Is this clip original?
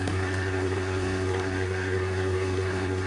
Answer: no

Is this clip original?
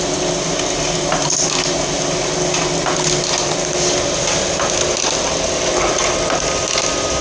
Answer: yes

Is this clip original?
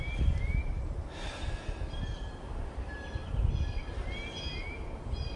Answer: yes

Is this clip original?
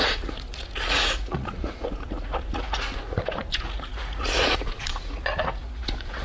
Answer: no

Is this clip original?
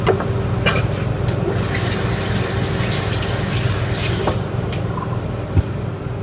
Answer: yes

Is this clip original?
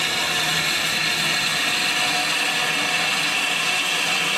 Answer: yes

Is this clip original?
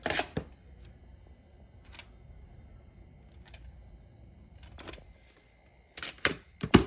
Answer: no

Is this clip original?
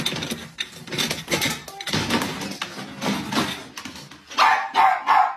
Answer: yes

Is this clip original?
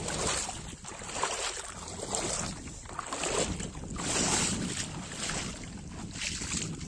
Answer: yes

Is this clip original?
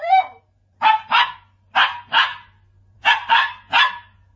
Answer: yes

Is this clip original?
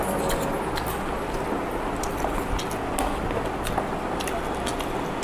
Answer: yes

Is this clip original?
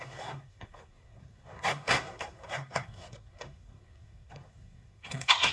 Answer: no